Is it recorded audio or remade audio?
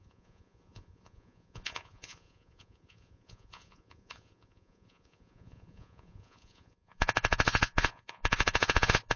remade